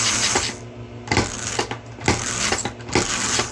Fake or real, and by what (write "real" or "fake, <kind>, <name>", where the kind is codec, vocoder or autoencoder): real